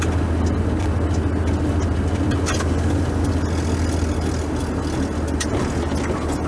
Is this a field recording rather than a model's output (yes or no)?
yes